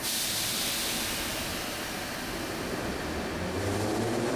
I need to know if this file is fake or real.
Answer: real